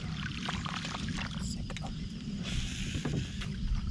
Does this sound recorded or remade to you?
recorded